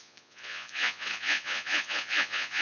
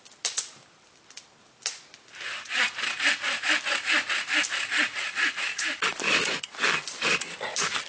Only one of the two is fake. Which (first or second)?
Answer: first